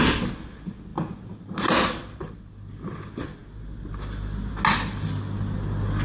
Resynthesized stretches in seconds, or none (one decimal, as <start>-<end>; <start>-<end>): none